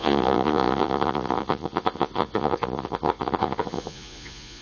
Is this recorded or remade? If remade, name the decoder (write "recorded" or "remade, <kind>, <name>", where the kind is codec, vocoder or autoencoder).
remade, vocoder, Vocos